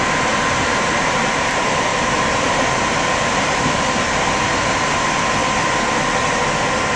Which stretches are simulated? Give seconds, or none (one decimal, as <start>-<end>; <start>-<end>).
0.0-5.4

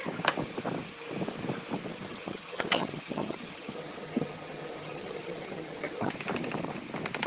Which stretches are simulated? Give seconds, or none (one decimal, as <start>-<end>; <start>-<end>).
1.9-6.1

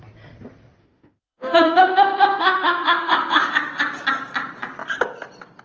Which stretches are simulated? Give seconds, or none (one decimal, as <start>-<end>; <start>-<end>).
0.8-3.5

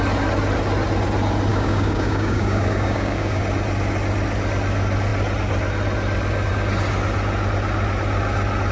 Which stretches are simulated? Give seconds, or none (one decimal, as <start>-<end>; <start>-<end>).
1.5-3.4

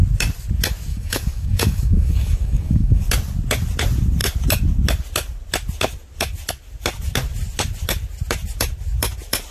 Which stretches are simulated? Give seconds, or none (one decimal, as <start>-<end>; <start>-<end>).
0.9-3.1

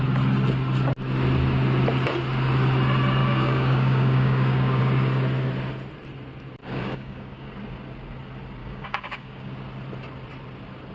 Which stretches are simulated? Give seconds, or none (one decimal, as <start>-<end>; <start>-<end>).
3.2-4.8; 6.6-7.5; 8.6-9.5

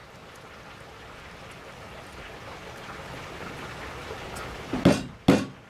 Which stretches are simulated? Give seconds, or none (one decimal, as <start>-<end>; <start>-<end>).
none

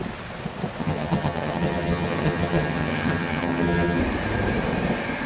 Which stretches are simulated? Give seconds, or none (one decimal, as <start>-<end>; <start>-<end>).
0.8-4.0